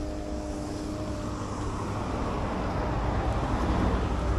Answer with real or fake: real